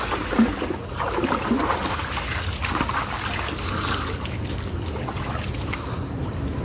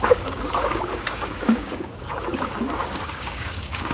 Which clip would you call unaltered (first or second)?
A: first